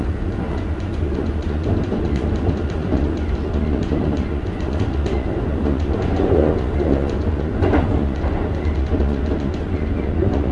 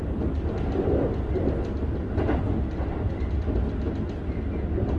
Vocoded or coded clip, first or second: first